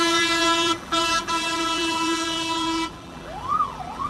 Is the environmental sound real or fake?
fake